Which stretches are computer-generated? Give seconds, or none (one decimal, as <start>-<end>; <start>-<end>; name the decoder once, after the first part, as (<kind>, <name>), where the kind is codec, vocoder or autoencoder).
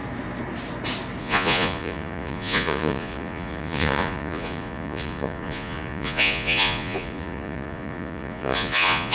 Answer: 1.2-9.1 (vocoder, Vocos)